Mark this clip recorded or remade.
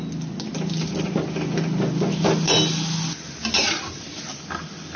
recorded